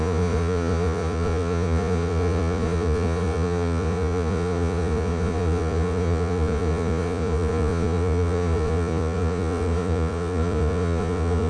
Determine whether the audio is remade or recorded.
remade